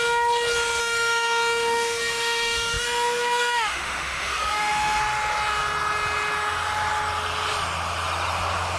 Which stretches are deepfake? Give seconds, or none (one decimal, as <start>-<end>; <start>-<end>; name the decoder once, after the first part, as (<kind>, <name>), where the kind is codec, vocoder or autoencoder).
0.8-5.0 (autoencoder, DAC-VAE)